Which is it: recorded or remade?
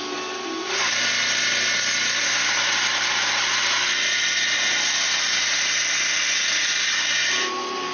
recorded